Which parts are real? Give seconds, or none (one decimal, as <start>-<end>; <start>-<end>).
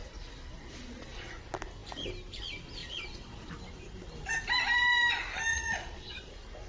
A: 1.4-2.8; 3.5-5.5; 6.3-6.7